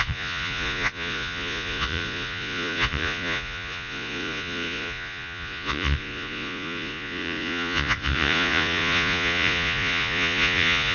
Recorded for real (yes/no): no